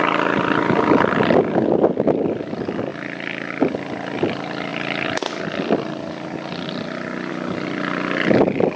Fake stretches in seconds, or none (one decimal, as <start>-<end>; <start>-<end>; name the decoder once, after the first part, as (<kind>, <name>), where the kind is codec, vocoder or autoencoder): none